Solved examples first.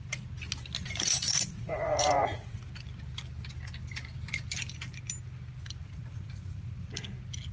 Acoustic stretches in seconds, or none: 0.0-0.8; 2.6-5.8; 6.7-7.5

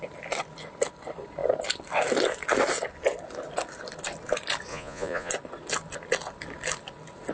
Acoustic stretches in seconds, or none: 0.0-4.7; 5.3-7.3